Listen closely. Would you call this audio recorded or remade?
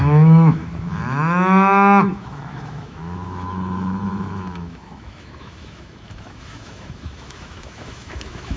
remade